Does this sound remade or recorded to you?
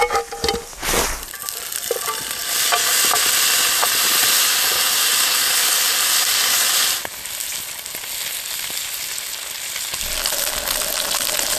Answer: recorded